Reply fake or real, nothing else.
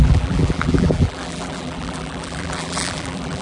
fake